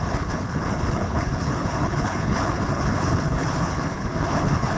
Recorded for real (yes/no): no